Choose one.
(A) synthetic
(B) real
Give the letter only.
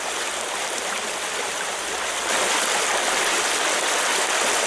B